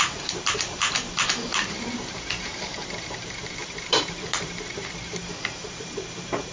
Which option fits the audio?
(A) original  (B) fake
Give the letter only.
B